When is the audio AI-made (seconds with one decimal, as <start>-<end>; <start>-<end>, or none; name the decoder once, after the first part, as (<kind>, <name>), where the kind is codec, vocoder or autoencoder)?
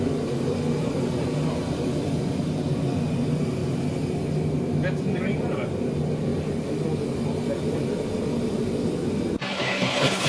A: 9.5-10.3 (codec, HILCodec)